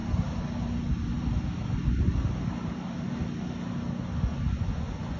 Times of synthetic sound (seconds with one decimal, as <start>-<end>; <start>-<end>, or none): 4.3-5.2